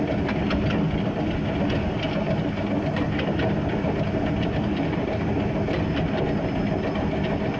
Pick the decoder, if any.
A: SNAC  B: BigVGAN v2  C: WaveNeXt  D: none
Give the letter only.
D